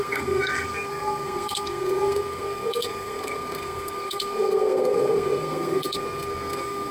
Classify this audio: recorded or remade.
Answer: remade